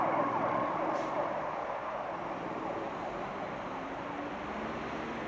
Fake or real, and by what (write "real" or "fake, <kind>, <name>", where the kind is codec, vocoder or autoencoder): real